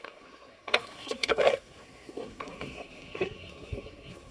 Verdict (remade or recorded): remade